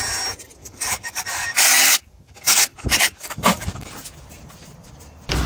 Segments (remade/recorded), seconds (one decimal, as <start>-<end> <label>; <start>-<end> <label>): 0.0-0.6 recorded; 0.6-3.9 remade; 3.9-5.5 recorded